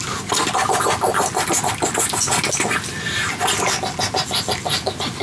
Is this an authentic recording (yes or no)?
yes